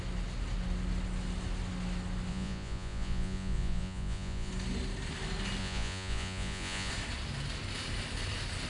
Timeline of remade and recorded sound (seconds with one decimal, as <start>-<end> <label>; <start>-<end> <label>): 0.0-2.3 recorded; 2.3-4.5 remade; 4.5-5.6 recorded; 5.6-6.9 remade; 6.9-8.7 recorded